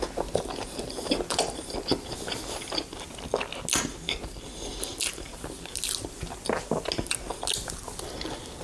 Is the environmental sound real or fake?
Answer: real